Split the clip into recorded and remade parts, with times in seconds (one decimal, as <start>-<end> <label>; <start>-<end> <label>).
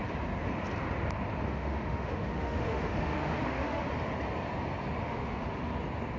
0.0-1.5 recorded; 1.5-3.8 remade; 3.8-5.0 recorded; 5.0-5.6 remade; 5.6-6.2 recorded